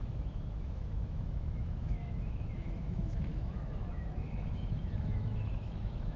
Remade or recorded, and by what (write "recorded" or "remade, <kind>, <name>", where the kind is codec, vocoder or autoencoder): remade, autoencoder, DAC-VAE